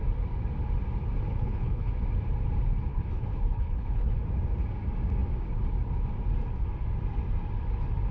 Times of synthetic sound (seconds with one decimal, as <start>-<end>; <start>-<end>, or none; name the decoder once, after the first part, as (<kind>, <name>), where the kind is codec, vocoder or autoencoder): 1.3-1.9 (codec, HILCodec); 2.9-4.2